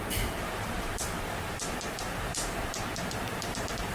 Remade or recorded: remade